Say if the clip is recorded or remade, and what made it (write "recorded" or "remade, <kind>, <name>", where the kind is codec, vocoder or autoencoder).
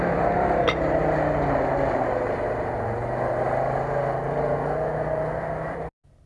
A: recorded